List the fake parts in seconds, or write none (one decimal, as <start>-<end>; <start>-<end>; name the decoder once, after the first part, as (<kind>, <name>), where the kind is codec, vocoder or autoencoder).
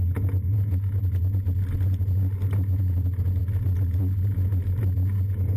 0.5-1.0 (vocoder, Vocos)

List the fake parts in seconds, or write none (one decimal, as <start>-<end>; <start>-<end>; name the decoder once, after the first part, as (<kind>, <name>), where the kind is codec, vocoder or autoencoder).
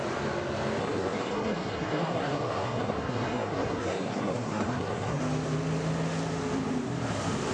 0.8-5.2 (codec, SNAC)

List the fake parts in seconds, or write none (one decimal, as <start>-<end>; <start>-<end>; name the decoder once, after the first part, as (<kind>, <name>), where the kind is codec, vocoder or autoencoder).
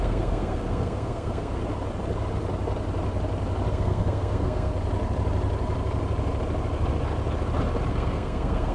0.0-1.6 (codec, SNAC); 3.7-4.7; 7.9-8.7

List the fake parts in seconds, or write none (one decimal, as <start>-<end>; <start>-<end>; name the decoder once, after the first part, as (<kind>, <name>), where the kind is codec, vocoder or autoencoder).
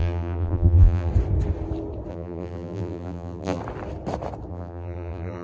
0.0-1.1 (vocoder, BigVGAN v2); 2.1-3.6; 4.5-5.4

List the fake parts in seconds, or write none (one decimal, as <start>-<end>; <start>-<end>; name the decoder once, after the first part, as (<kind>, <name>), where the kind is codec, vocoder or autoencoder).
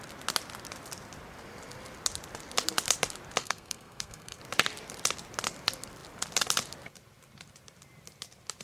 3.4-4.4 (codec, SNAC)